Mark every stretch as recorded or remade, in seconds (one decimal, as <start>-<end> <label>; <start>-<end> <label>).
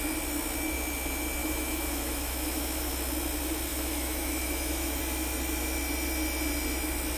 0.0-1.4 recorded; 1.4-2.9 remade; 2.9-3.7 recorded; 3.7-5.0 remade; 5.0-7.2 recorded